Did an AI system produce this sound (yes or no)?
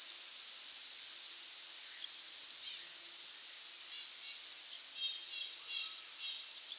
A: no